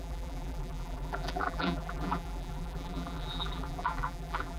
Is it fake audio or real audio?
fake